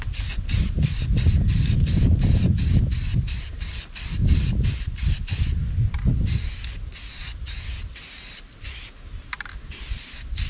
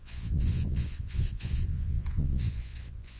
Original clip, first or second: first